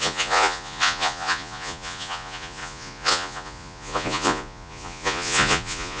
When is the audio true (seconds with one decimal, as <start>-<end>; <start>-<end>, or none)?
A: none